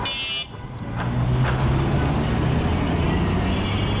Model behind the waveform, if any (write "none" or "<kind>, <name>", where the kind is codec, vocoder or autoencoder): none